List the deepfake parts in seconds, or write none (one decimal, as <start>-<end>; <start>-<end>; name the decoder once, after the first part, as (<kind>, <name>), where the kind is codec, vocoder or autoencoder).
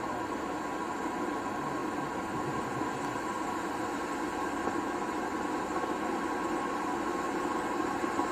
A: none